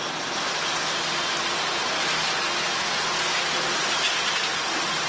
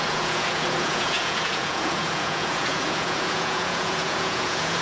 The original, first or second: first